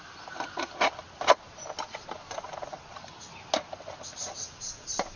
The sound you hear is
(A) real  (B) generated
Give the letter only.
A